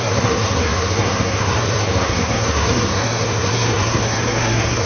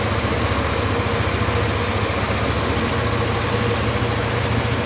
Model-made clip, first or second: first